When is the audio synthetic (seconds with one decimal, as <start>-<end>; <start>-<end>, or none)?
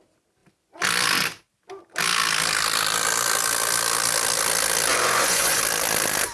4.9-5.6